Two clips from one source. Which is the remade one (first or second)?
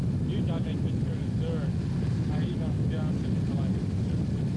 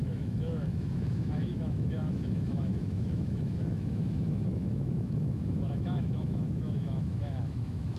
second